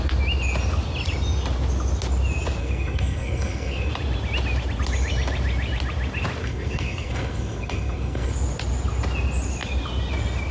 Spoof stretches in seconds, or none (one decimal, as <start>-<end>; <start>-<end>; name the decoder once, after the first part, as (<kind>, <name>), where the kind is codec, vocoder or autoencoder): 2.6-3.9 (codec, SNAC); 6.4-8.3